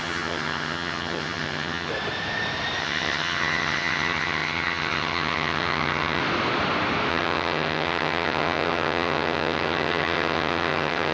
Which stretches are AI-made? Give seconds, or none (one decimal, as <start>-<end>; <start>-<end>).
0.0-1.9; 2.8-6.2; 7.1-11.1